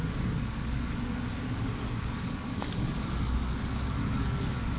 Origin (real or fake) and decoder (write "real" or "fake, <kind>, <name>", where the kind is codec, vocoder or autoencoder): fake, codec, DAC